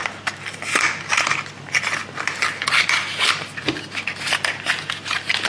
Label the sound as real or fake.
real